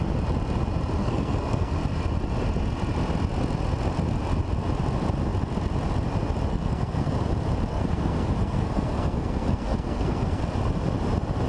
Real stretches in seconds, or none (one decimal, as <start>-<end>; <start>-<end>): 0.0-1.0; 1.7-6.5; 7.1-7.7; 10.4-11.5